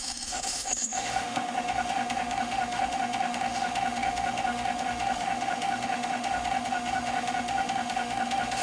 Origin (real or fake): fake